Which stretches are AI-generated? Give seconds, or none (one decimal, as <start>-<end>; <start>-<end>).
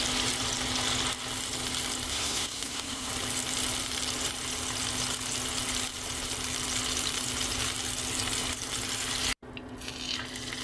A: 2.1-3.1